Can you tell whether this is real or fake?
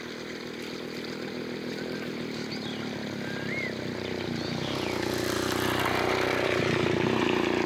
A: fake